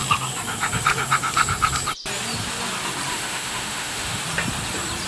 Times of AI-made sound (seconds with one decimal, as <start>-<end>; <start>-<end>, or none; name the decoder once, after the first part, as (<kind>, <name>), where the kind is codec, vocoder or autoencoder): 3.1-4.2 (autoencoder, DAC-VAE)